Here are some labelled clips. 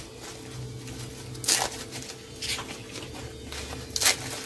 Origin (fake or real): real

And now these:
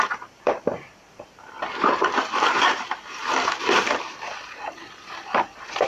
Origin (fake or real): fake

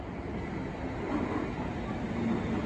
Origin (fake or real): real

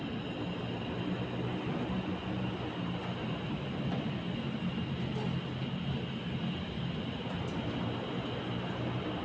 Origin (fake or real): real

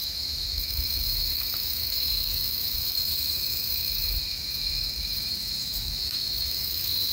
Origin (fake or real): fake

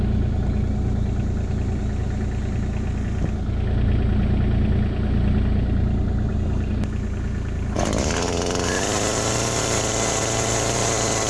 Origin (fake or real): real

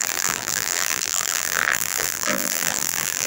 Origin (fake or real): fake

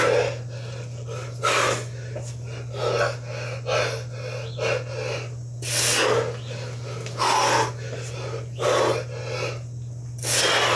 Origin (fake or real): real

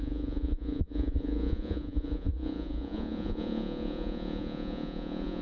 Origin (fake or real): fake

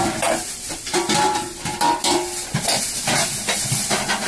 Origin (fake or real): real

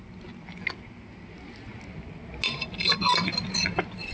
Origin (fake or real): real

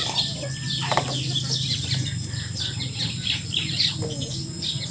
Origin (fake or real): real